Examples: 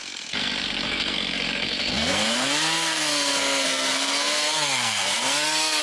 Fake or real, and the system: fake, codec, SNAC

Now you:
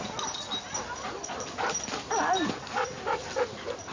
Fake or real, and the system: real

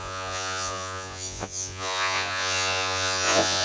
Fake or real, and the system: fake, vocoder, Vocos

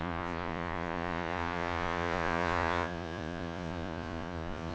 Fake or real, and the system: fake, vocoder, Vocos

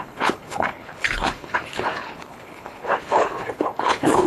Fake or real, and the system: fake, codec, HILCodec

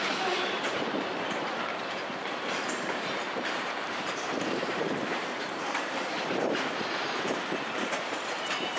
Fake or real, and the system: fake, vocoder, BigVGAN v2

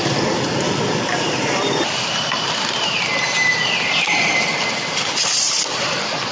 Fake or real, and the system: real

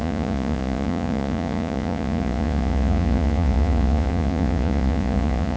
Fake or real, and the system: fake, vocoder, Vocos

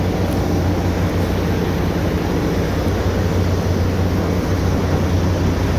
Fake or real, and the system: real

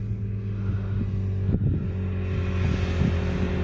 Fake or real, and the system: real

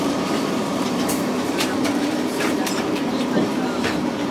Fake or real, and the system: fake, vocoder, BigVGAN v2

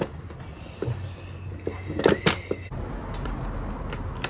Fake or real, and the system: real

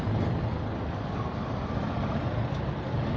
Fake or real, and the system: real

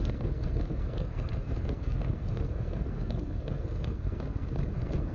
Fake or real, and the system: fake, codec, SNAC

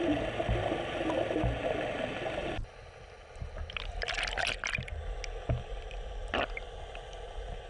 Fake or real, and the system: real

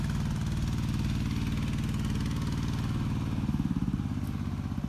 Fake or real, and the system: real